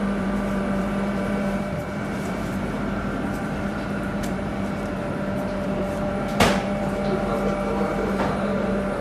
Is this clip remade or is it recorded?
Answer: remade